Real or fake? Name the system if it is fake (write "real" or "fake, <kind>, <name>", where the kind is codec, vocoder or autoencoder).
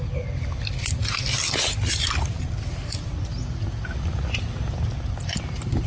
real